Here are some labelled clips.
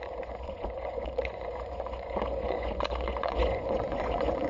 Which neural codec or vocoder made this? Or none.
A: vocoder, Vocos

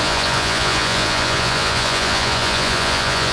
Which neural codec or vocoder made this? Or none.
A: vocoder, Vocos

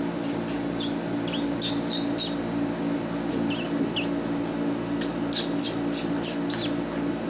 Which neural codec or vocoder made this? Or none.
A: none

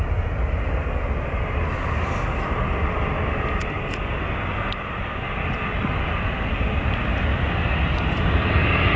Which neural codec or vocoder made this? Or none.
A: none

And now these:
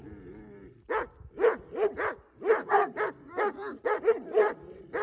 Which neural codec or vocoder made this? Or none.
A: none